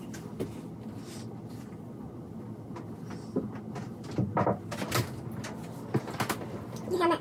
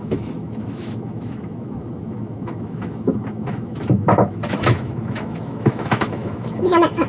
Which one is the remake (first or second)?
second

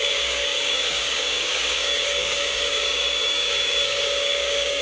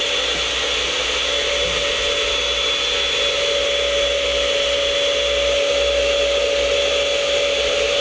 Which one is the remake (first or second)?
first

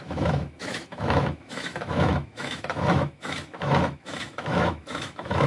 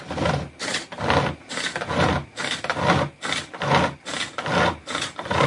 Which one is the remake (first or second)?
first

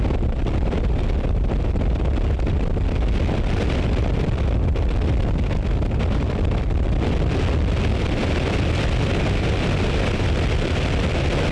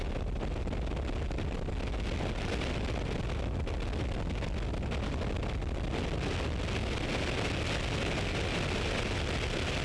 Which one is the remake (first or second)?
first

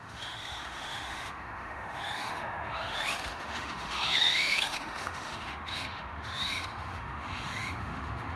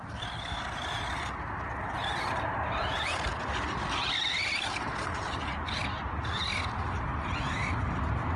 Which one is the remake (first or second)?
first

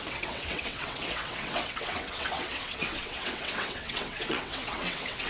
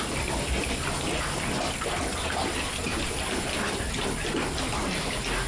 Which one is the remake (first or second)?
first